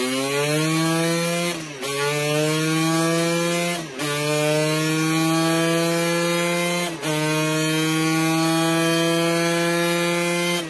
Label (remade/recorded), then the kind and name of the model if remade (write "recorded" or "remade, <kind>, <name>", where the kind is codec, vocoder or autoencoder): recorded